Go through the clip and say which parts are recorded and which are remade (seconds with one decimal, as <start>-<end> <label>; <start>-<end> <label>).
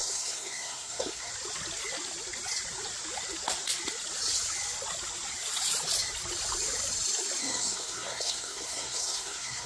0.0-1.3 remade; 1.3-7.4 recorded; 7.4-9.7 remade